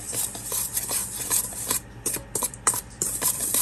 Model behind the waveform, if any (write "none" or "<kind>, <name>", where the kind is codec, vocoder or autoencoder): vocoder, BigVGAN v2